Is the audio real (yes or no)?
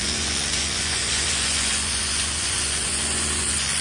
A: no